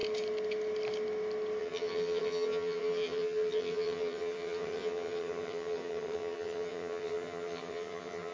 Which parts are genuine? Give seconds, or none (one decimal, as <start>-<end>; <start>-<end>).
0.0-1.6